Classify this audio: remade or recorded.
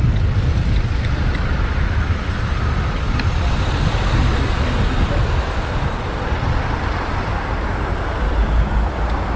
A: recorded